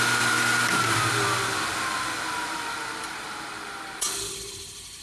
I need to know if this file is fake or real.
fake